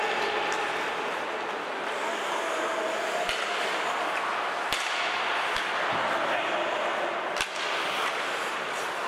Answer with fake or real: real